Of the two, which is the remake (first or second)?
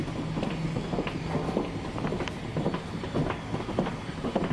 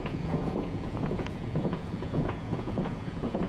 second